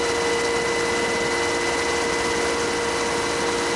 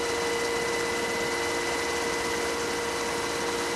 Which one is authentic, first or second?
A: first